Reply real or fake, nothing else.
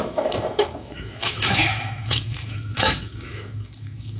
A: fake